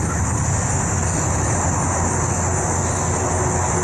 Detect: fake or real real